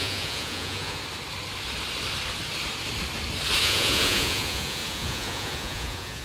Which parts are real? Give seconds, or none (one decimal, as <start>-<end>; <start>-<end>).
1.0-3.6